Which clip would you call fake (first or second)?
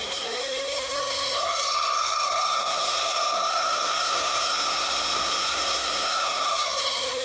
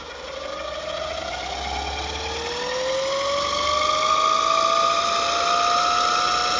first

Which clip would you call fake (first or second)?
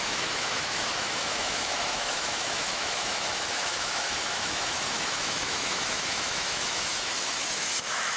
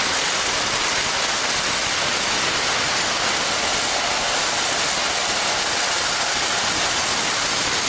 first